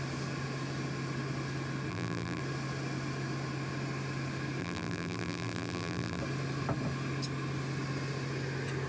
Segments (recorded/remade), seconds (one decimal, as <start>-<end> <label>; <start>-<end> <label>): 0.0-1.9 recorded; 1.9-2.4 remade; 2.4-4.6 recorded; 4.6-6.2 remade; 6.2-8.9 recorded